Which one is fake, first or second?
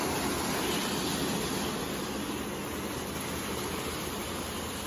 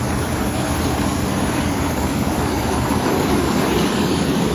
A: second